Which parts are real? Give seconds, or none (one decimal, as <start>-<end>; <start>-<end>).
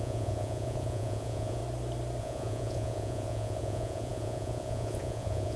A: 1.6-2.2